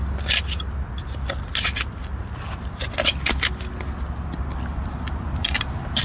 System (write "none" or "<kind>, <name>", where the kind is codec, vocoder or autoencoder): none